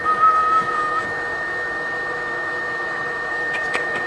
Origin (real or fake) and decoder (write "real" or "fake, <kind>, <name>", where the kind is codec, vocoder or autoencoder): fake, autoencoder, DAC-VAE